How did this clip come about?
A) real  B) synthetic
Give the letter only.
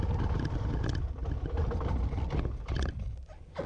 A